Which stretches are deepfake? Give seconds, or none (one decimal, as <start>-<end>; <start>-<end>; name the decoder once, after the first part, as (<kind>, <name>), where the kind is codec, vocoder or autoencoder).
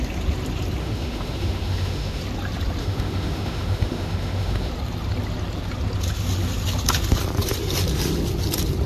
0.8-2.2 (autoencoder, DAC-VAE); 2.8-4.7